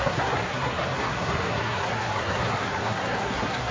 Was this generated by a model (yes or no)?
yes